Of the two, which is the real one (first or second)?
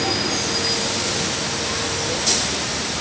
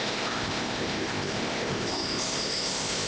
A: first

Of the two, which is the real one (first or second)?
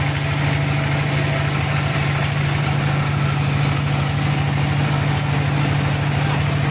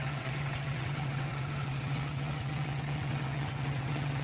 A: first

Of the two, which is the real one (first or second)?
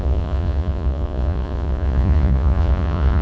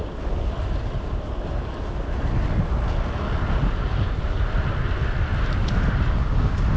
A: second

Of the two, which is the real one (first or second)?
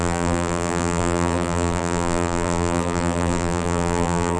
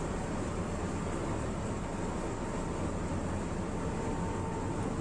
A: second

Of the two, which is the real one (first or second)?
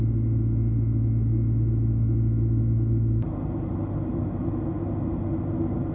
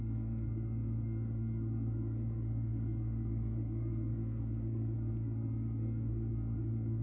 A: first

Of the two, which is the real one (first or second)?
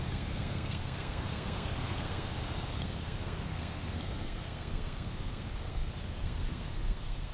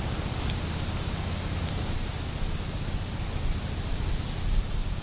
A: second